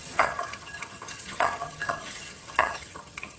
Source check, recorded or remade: remade